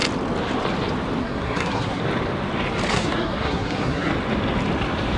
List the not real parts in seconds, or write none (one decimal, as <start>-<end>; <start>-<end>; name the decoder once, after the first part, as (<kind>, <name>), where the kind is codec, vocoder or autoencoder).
1.2-2.0 (codec, SNAC); 2.9-4.1